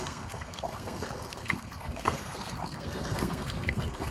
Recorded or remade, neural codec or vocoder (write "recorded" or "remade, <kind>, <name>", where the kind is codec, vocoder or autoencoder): remade, codec, SNAC